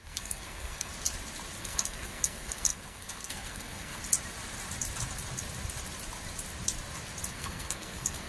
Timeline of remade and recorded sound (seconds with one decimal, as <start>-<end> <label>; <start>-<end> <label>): 0.0-0.9 remade; 0.9-1.6 recorded; 1.6-4.0 remade; 4.0-7.3 recorded; 7.3-8.3 remade